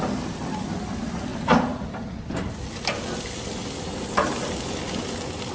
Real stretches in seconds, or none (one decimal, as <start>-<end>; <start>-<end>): 0.0-5.5